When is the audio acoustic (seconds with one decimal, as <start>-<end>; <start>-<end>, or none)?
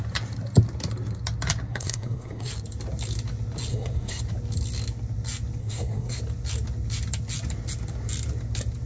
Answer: 0.0-1.7; 2.5-3.7; 4.2-5.6; 6.2-8.9